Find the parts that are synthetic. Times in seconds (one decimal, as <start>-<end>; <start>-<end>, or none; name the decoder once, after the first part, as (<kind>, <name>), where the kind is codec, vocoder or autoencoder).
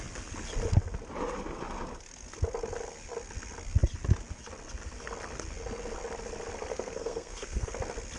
6.7-7.7 (codec, SNAC)